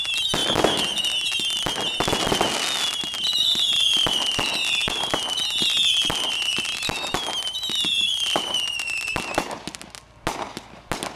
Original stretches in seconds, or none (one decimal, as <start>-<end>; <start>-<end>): 0.0-11.2